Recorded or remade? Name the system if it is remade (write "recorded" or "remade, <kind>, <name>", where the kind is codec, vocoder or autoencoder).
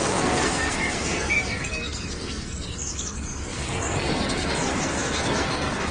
remade, codec, SNAC